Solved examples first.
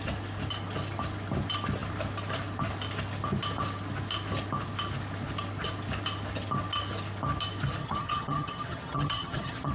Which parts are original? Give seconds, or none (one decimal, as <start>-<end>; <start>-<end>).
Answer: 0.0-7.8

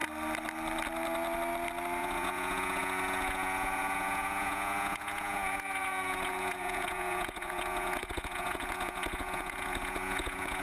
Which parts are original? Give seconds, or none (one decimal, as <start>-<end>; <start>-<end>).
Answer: 0.0-2.0

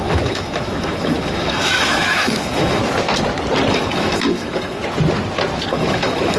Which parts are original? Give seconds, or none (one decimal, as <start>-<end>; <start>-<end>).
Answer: 2.8-3.7; 4.8-5.7

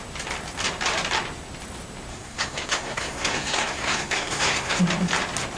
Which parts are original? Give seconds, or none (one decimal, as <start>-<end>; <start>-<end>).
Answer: 0.0-2.1; 4.8-5.6

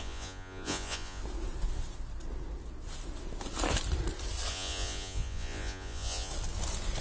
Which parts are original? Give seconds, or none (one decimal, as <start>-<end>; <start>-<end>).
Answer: 1.2-4.5; 6.3-7.0

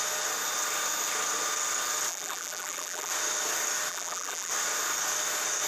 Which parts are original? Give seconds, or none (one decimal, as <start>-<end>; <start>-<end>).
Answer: 0.0-2.1; 3.1-3.9; 4.5-5.7

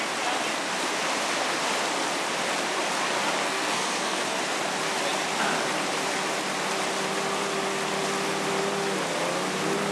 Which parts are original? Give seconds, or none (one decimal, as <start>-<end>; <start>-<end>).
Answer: 0.0-3.4; 4.4-9.9